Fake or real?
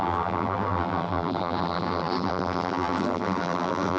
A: fake